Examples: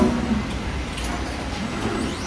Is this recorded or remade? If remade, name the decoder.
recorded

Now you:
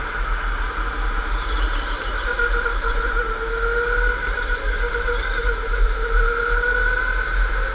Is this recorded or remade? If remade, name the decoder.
recorded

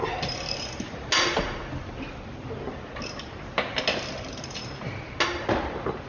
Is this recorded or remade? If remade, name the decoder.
recorded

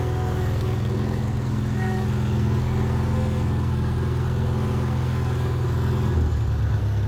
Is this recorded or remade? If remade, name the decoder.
remade, codec, SNAC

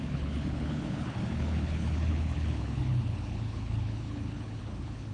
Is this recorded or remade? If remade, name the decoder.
remade, codec, HILCodec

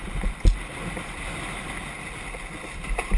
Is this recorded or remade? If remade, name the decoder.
recorded